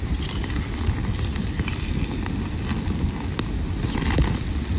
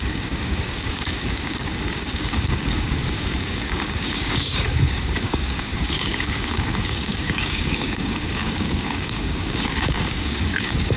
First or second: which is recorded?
first